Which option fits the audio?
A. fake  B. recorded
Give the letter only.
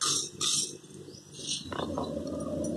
B